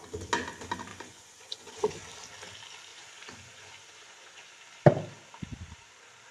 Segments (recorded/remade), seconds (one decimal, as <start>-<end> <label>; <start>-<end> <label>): 0.0-0.9 recorded; 0.9-2.0 remade; 2.0-2.9 recorded; 2.9-4.6 remade; 4.6-6.3 recorded